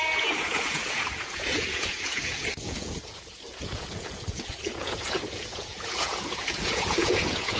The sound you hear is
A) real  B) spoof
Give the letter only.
B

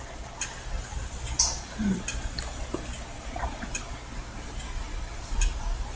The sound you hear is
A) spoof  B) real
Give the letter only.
B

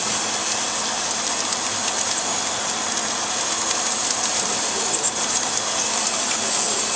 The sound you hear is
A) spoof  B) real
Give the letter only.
B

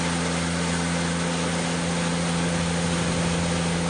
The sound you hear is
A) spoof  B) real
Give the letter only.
B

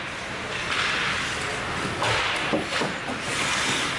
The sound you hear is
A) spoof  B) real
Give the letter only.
B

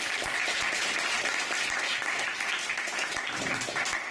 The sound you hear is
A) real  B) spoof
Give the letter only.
A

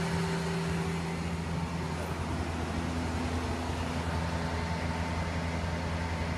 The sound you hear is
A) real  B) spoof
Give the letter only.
A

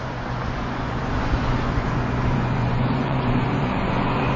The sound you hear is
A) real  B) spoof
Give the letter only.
B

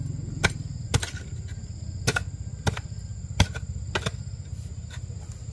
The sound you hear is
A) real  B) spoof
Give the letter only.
A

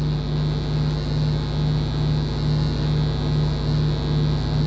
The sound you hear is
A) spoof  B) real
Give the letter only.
B